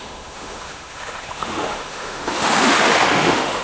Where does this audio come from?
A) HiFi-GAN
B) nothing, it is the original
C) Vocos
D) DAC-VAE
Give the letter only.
D